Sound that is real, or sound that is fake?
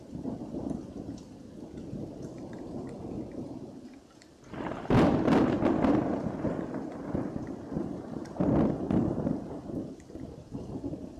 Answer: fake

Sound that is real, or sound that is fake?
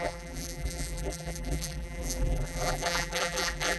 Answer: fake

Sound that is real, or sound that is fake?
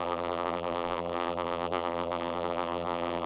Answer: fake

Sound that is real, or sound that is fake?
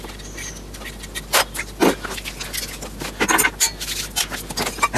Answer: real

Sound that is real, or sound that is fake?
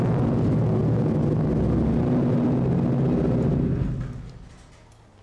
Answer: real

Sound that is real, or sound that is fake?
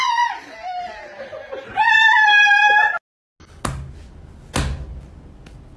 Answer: real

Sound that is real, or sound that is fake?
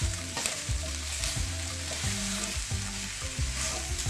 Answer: fake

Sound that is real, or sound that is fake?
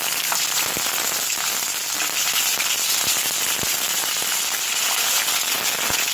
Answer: real